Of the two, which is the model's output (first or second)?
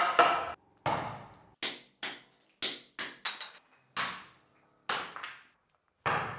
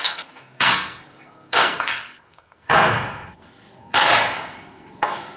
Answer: second